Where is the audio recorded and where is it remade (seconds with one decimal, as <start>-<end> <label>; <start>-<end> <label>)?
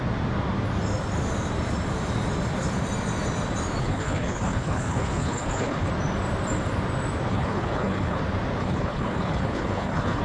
0.0-3.8 recorded; 3.8-5.9 remade; 5.9-7.3 recorded; 7.3-8.2 remade; 8.2-8.6 recorded; 8.6-10.2 remade